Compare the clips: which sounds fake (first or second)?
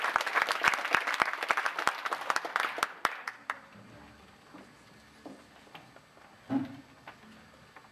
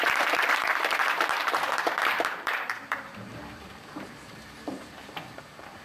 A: second